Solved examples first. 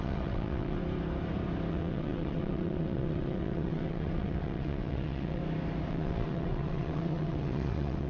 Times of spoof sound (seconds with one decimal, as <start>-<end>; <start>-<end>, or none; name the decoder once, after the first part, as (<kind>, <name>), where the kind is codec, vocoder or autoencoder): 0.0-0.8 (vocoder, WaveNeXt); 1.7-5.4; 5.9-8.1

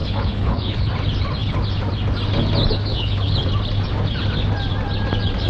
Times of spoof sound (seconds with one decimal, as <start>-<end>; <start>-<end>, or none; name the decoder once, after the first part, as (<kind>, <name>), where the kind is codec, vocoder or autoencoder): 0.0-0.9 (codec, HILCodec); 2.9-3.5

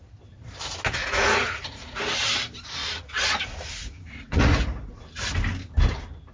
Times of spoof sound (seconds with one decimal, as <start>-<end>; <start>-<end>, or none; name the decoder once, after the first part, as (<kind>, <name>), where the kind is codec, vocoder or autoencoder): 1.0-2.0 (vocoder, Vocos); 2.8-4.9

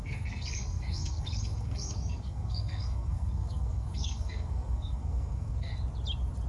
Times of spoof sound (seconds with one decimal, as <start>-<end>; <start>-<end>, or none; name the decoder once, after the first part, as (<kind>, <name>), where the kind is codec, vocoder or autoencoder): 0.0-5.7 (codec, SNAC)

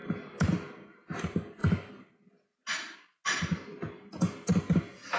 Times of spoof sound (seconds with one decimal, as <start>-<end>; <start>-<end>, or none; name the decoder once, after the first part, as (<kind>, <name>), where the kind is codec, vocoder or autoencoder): none